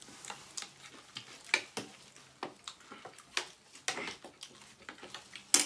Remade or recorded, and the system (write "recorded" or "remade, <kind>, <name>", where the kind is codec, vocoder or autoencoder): recorded